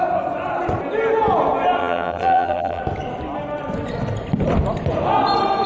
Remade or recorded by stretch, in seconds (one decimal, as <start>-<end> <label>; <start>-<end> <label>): 0.0-1.8 recorded; 1.8-2.8 remade; 2.8-5.7 recorded